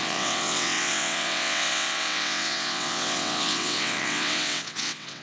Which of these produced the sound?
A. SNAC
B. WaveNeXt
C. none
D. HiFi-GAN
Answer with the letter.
B